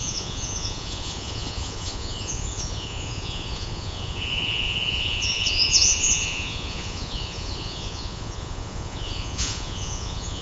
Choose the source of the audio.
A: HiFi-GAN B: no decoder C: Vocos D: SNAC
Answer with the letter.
C